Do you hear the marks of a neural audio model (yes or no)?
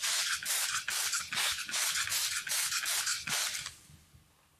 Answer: no